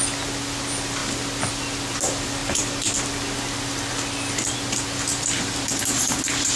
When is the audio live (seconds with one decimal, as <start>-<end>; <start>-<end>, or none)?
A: 0.0-6.6